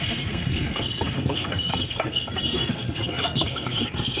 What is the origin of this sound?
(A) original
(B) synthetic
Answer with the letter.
B